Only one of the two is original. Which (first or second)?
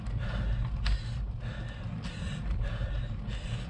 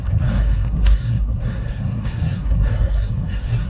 first